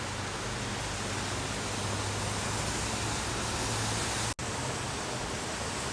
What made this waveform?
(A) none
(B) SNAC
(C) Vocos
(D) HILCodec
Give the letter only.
A